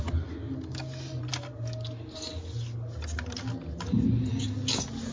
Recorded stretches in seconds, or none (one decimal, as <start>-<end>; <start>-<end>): 0.0-5.1